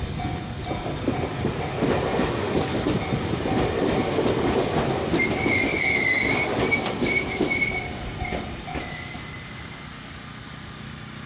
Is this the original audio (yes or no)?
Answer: yes